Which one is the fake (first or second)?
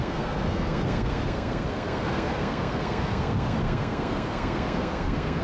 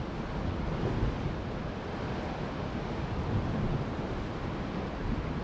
first